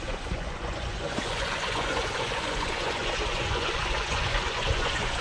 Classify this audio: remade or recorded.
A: remade